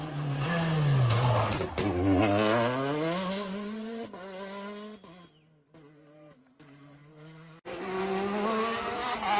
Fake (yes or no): no